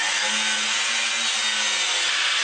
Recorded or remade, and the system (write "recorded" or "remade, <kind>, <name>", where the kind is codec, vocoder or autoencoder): recorded